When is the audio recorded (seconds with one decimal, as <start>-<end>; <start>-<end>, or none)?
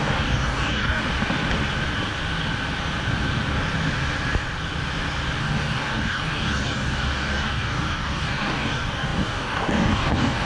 1.0-5.4